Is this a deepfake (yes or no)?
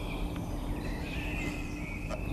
no